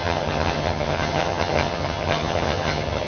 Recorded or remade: remade